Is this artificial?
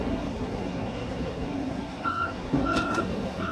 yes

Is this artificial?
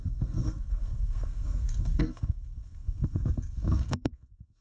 yes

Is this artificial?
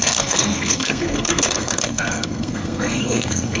yes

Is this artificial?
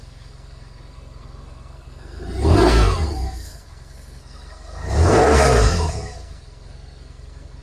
yes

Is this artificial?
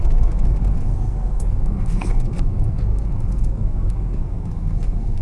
yes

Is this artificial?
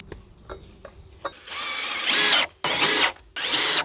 no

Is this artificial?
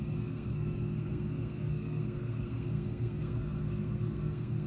yes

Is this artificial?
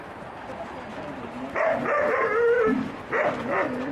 no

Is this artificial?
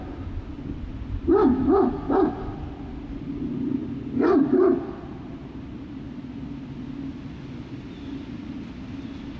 no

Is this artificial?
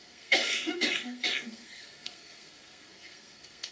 yes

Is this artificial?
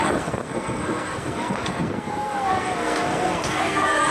yes